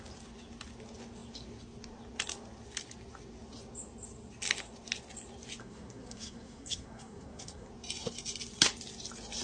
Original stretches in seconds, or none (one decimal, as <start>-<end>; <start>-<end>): 0.0-5.6; 7.7-9.4